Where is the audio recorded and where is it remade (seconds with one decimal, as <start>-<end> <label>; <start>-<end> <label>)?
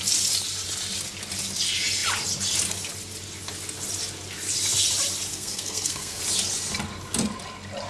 0.0-5.3 recorded; 5.3-6.2 remade; 6.2-7.9 recorded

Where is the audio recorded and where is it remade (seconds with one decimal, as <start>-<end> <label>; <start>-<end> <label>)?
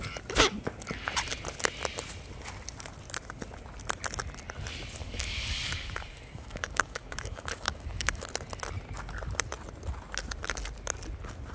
0.0-5.0 recorded; 5.0-8.2 remade; 8.2-11.5 recorded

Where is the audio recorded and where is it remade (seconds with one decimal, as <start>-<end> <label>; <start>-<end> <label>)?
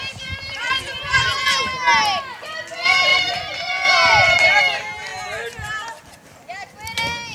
0.0-0.6 recorded; 0.6-1.6 remade; 1.6-3.1 recorded; 3.1-4.6 remade; 4.6-7.3 recorded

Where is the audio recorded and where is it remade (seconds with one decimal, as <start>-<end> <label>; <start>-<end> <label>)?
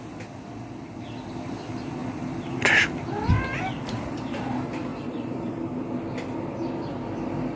0.0-3.7 recorded; 3.7-4.5 remade; 4.5-4.9 recorded; 4.9-5.5 remade; 5.5-7.6 recorded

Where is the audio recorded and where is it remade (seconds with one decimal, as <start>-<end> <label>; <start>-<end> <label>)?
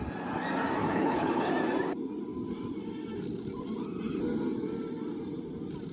0.0-0.8 recorded; 0.8-1.5 remade; 1.5-5.9 recorded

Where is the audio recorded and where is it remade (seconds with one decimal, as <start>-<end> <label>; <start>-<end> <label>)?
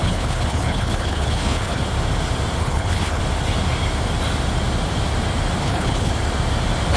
0.0-1.8 remade; 1.8-2.6 recorded; 2.6-3.2 remade; 3.2-5.6 recorded; 5.6-6.1 remade; 6.1-7.0 recorded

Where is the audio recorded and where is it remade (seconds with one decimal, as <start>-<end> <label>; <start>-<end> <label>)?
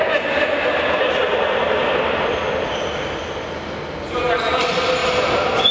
0.0-1.3 remade; 1.3-3.8 recorded; 3.8-5.7 remade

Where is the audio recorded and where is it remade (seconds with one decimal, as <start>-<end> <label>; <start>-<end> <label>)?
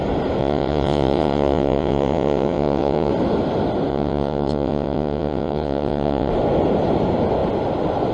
0.0-0.4 recorded; 0.4-3.1 remade; 3.1-3.9 recorded; 3.9-6.3 remade; 6.3-8.1 recorded